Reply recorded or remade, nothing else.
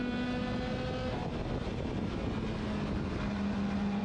recorded